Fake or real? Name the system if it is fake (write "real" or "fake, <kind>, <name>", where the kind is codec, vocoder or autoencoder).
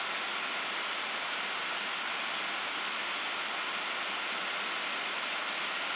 real